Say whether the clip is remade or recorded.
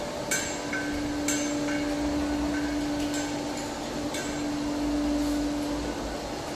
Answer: recorded